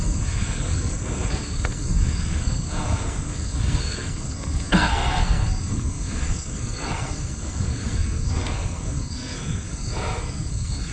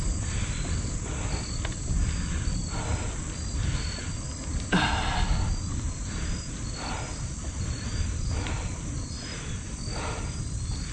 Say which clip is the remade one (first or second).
first